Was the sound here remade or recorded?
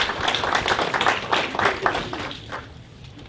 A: remade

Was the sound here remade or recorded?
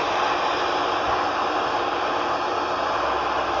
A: recorded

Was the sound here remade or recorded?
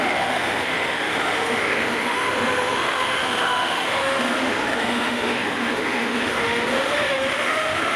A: remade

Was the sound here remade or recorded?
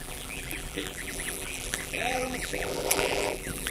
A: remade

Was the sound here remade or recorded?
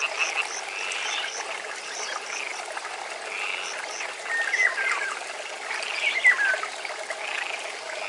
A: recorded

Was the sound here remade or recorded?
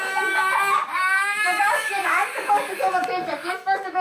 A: remade